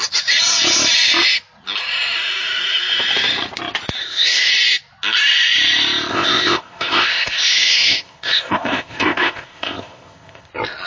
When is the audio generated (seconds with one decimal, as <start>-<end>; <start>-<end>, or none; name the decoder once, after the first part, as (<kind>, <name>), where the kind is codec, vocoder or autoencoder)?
4.0-4.5 (codec, ZipCodec); 6.1-10.5